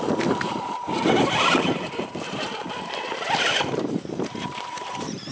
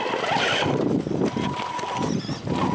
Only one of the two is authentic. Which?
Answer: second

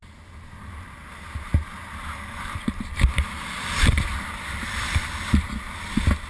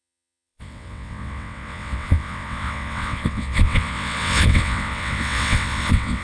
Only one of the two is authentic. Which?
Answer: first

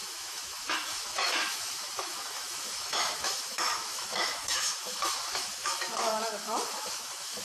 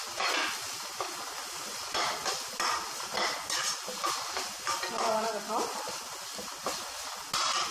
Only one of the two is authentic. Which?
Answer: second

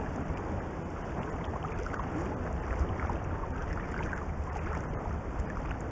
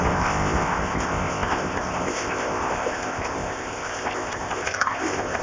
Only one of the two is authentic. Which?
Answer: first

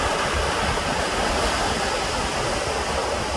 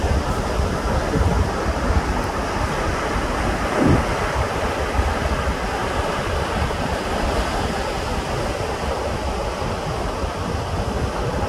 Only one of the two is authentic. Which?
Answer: first